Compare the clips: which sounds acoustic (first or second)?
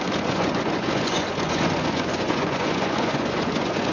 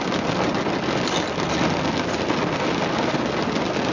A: second